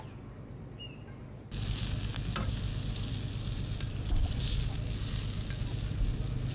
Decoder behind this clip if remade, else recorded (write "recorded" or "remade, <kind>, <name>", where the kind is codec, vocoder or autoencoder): recorded